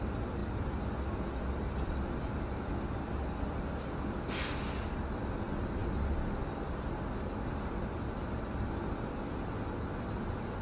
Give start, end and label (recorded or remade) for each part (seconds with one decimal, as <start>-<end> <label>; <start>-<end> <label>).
0.0-10.6 recorded